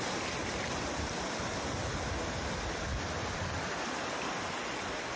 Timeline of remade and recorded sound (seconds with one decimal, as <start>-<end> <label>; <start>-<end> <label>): 0.0-2.9 recorded; 2.9-4.3 remade; 4.3-5.2 recorded